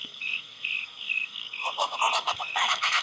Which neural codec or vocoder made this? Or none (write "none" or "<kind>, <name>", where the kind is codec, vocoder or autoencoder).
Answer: codec, SNAC